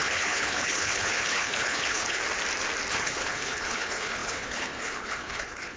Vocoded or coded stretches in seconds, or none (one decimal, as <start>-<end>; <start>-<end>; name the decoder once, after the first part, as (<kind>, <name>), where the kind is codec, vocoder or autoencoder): 0.0-2.2 (codec, HILCodec); 2.9-5.8